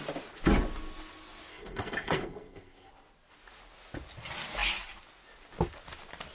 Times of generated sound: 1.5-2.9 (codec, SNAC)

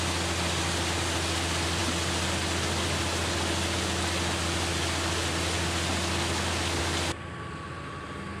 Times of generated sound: none

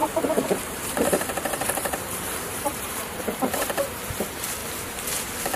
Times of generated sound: 0.0-4.6 (vocoder, BigVGAN v2)

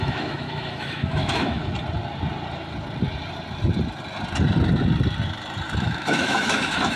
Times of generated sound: 0.0-1.6 (autoencoder, DAC-VAE); 5.8-7.0

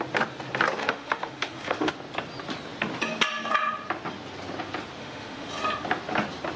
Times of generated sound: 0.8-1.9 (autoencoder, DAC-VAE); 5.0-5.5